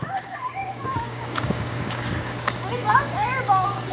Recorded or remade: remade